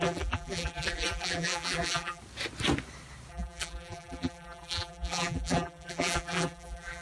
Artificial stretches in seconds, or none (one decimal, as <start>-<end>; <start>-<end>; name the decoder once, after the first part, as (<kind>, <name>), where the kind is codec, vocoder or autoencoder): 0.0-2.2 (vocoder, BigVGAN v2); 3.3-7.0